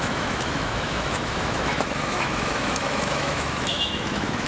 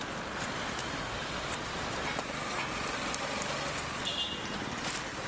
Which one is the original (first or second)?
second